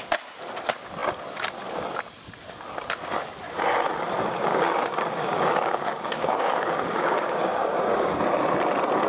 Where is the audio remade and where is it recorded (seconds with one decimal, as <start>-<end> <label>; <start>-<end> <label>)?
0.0-4.5 recorded; 4.5-8.2 remade; 8.2-9.1 recorded